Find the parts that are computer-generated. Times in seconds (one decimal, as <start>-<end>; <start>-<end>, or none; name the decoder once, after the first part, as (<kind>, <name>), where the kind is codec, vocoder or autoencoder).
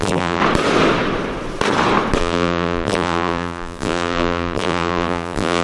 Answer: 0.0-0.4 (vocoder, BigVGAN v2); 2.2-5.6